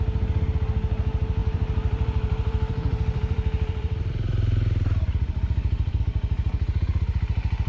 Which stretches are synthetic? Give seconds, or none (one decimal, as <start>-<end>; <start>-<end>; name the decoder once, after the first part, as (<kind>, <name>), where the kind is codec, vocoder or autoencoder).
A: 1.4-6.0 (vocoder, BigVGAN v2)